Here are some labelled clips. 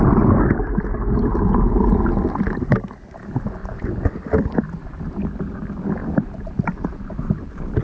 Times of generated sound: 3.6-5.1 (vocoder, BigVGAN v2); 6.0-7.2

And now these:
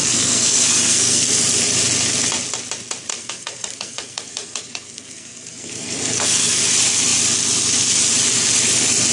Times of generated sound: 0.0-1.4 (codec, SNAC); 3.1-6.6

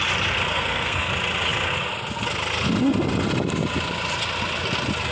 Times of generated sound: 0.5-1.1 (codec, SNAC)